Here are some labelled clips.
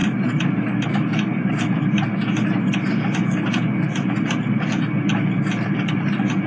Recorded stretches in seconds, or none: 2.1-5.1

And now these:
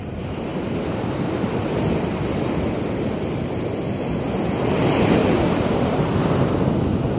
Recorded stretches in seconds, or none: 0.0-5.2; 6.6-7.2

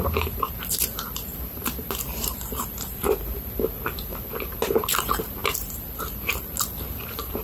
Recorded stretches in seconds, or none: none

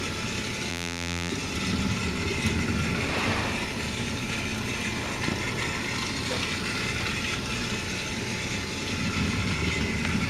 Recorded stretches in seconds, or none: 0.0-0.7; 1.3-10.3

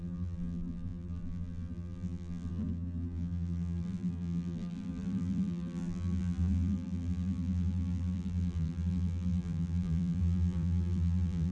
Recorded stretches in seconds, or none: none

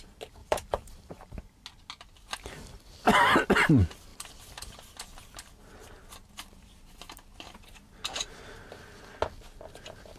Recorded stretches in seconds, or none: 0.0-0.4; 1.4-10.2

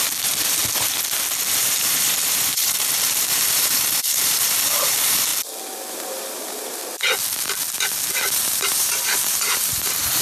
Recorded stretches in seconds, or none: 0.6-1.5; 5.3-5.9; 6.8-8.3